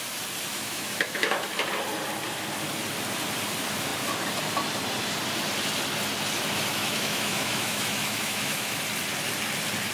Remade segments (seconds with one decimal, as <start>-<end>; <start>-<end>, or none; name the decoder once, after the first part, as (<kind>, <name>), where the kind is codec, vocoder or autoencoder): 0.5-1.6 (autoencoder, DAC-VAE); 6.7-8.8

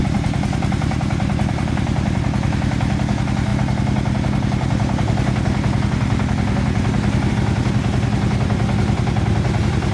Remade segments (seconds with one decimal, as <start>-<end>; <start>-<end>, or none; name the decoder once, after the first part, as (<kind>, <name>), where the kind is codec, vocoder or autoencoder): 0.0-2.2 (vocoder, BigVGAN v2)

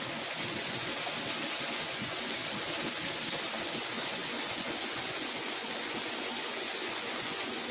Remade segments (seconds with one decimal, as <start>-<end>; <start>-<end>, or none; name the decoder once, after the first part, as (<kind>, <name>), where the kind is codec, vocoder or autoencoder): 0.0-0.9 (vocoder, Vocos); 1.6-2.4; 3.6-7.7

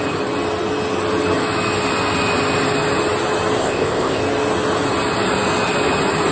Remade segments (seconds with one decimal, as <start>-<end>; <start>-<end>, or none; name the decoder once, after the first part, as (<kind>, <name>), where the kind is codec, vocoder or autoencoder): 3.6-4.2 (codec, ZipCodec)

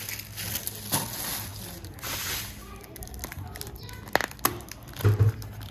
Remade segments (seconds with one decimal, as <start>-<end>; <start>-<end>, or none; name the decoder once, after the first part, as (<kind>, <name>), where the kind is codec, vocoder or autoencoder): none

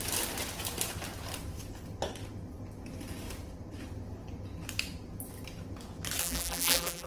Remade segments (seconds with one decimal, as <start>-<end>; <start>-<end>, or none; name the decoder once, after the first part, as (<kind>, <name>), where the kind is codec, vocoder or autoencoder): 6.2-7.1 (vocoder, BigVGAN v2)